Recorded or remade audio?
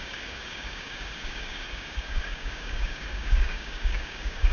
remade